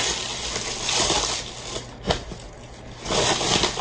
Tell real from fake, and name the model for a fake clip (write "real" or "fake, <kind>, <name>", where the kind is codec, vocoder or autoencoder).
real